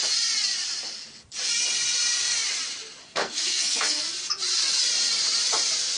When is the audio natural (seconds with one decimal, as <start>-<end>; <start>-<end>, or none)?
0.0-3.0; 4.0-6.0